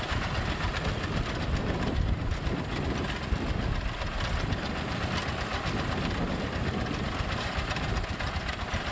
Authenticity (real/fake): real